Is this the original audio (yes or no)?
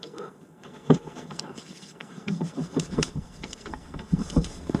no